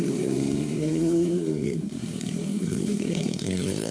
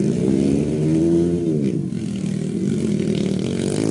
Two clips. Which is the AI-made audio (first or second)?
first